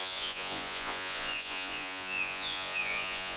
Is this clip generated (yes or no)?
yes